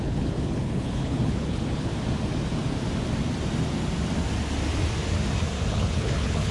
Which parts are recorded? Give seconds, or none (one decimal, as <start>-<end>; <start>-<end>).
1.9-5.7